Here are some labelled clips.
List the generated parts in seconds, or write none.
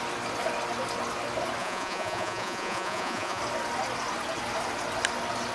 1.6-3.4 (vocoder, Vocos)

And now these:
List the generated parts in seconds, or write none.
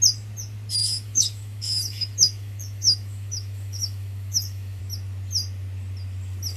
0.8-4.8 (autoencoder, DAC-VAE)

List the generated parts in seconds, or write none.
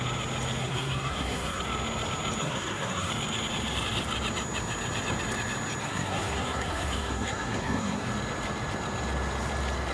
0.6-1.6 (codec, SNAC); 2.4-3.1; 5.8-8.1